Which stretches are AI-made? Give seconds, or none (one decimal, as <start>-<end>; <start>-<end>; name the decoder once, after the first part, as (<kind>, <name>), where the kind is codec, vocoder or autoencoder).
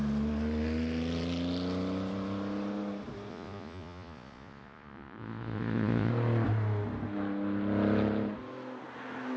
3.3-6.1 (vocoder, Vocos)